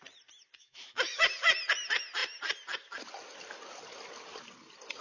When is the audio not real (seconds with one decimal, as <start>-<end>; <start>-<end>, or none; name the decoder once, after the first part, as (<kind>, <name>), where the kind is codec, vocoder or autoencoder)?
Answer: 0.6-1.2 (autoencoder, DAC-VAE)